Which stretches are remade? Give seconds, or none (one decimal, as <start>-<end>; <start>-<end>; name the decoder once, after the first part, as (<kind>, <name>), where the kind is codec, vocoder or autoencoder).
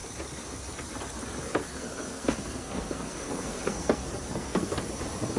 1.6-4.8 (codec, SNAC)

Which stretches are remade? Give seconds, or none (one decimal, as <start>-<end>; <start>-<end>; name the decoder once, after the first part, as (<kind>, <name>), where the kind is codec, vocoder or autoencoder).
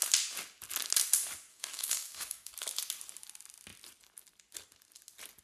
1.5-2.5 (codec, DAC)